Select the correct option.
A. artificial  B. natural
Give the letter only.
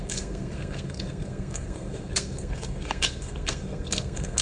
A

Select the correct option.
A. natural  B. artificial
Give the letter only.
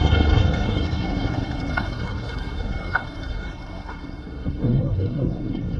B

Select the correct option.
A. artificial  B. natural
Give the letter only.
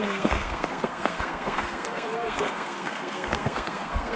A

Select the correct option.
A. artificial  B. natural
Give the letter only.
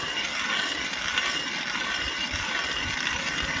B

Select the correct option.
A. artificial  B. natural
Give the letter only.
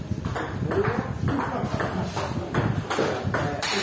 B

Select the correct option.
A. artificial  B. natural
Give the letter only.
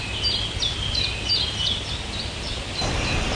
B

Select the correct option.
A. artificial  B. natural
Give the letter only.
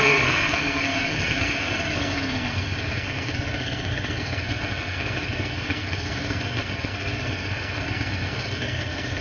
A